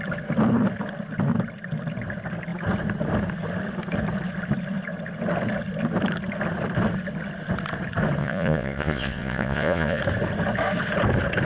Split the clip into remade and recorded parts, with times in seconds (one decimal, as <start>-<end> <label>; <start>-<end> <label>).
0.0-8.2 recorded; 8.2-10.0 remade; 10.0-11.4 recorded